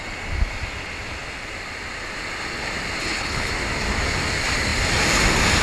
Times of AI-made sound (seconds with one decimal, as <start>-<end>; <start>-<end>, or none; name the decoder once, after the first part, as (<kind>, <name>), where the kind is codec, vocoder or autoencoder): 3.0-3.5 (codec, HILCodec)